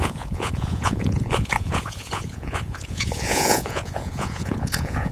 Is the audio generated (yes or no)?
yes